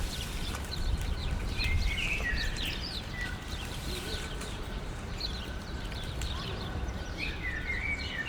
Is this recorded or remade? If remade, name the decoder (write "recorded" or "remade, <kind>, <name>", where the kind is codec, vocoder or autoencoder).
remade, vocoder, BigVGAN v2